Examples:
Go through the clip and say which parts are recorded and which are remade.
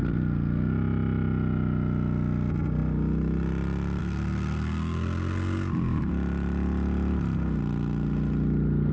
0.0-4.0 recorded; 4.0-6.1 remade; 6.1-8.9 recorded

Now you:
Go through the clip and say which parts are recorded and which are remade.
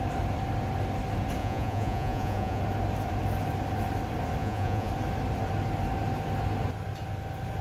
0.0-1.4 recorded; 1.4-2.6 remade; 2.6-4.4 recorded; 4.4-4.9 remade; 4.9-7.6 recorded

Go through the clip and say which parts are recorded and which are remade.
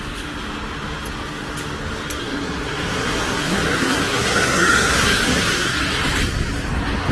0.0-2.2 recorded; 2.2-6.0 remade; 6.0-7.1 recorded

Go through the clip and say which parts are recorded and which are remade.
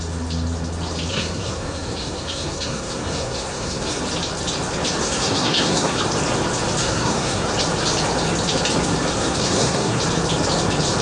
0.0-1.1 recorded; 1.1-4.0 remade; 4.0-5.0 recorded; 5.0-6.0 remade; 6.0-6.8 recorded; 6.8-7.5 remade; 7.5-9.1 recorded; 9.1-10.0 remade; 10.0-11.0 recorded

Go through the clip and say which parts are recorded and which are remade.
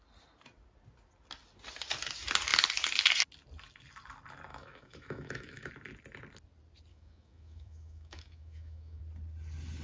0.0-4.5 recorded; 4.5-5.7 remade; 5.7-6.9 recorded; 6.9-9.0 remade; 9.0-9.8 recorded